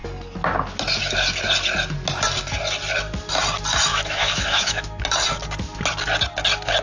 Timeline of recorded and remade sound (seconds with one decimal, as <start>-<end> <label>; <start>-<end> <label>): 0.0-3.9 recorded; 3.9-5.0 remade; 5.0-6.8 recorded